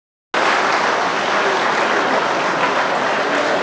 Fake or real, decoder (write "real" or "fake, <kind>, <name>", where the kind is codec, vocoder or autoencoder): real